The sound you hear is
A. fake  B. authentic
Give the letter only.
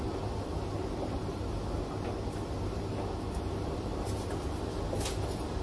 B